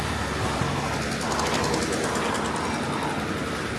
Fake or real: real